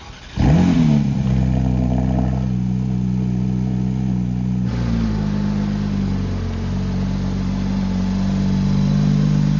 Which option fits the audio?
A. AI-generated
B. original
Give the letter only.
B